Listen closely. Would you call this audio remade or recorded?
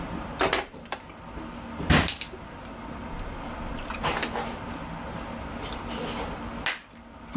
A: recorded